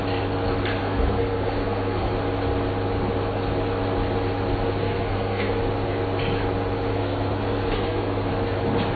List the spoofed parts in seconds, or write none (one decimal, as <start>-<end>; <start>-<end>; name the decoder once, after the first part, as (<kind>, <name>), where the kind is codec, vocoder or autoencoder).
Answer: 0.8-2.1 (codec, SNAC); 4.8-5.6; 6.9-8.3